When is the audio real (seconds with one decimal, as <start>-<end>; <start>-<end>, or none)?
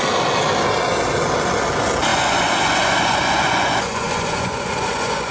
0.0-2.1